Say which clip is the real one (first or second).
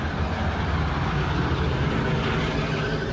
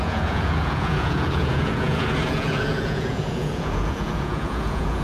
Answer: first